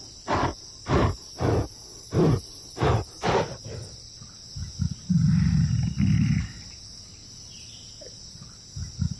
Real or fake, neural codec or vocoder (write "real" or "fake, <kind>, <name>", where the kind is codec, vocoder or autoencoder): real